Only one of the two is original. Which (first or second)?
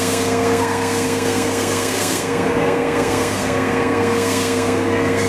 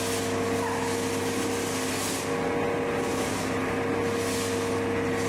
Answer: second